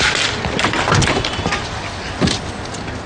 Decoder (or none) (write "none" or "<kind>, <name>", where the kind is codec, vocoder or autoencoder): none